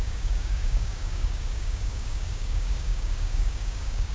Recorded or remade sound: remade